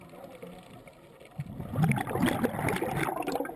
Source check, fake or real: fake